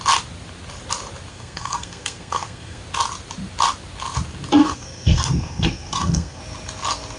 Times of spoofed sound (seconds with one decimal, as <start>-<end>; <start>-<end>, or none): 1.3-2.8; 4.6-6.4